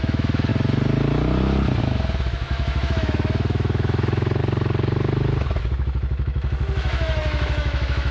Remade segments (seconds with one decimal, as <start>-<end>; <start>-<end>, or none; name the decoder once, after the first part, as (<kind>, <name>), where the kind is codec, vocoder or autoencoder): 0.0-0.5 (autoencoder, DAC-VAE); 1.8-4.4; 5.6-8.1